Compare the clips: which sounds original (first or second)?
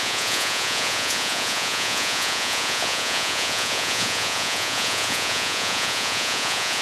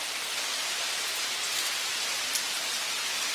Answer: second